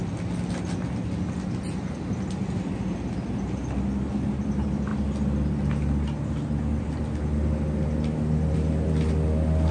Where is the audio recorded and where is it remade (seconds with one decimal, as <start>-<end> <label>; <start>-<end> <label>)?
0.0-9.7 recorded